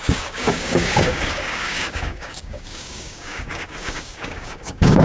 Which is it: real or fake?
fake